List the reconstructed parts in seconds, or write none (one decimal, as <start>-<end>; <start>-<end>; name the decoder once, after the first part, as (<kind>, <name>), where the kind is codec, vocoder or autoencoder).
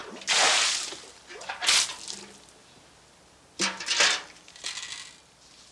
none